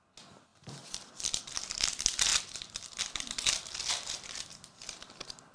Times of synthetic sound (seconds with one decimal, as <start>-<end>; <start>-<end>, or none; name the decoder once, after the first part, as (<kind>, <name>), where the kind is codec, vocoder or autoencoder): 0.5-1.4 (vocoder, BigVGAN v2); 2.3-3.5